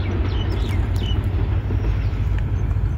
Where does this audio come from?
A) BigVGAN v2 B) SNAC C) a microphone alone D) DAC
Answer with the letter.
C